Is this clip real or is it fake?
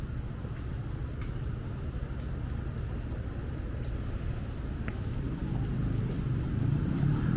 real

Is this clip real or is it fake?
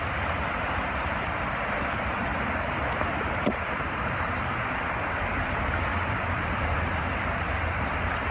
fake